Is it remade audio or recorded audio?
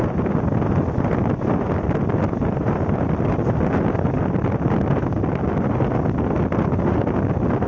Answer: recorded